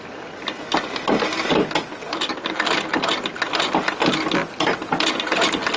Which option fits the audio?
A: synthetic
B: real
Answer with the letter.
B